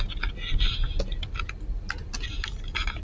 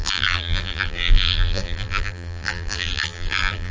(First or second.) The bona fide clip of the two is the first